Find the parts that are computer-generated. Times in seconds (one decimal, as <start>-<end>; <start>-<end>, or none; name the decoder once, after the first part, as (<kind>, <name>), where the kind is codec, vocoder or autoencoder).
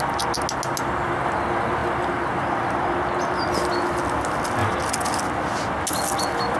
none